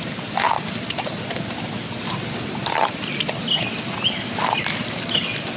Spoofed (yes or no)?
no